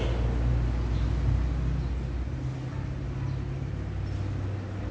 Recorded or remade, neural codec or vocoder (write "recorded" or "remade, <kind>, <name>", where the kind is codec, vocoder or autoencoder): recorded